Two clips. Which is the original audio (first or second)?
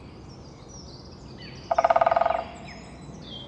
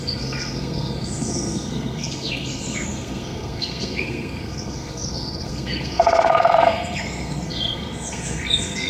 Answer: first